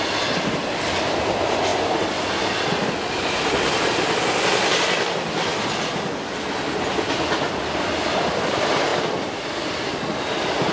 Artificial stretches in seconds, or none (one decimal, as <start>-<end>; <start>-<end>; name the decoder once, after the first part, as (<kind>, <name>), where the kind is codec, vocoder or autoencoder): none